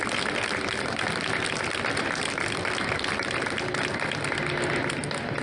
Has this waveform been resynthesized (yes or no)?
no